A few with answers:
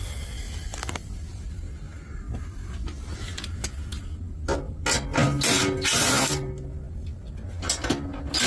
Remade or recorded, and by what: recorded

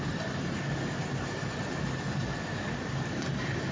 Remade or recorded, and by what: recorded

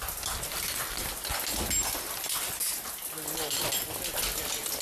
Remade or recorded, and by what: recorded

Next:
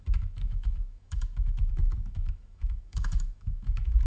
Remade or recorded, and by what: remade, autoencoder, DAC-VAE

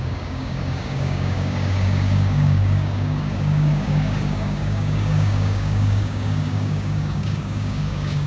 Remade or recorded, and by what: remade, codec, DAC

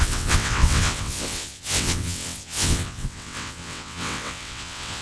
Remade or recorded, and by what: remade, vocoder, WaveNeXt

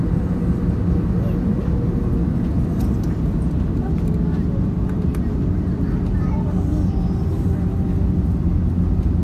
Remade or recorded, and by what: recorded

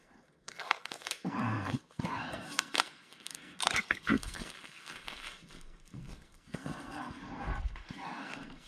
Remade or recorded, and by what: remade, codec, SNAC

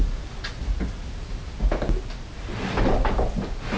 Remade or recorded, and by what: recorded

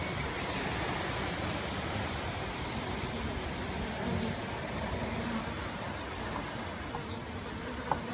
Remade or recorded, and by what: recorded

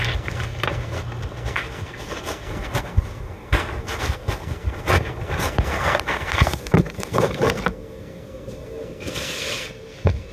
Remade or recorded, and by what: remade, codec, SNAC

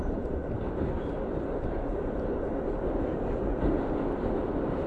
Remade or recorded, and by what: recorded